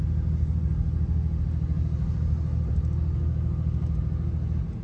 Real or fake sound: real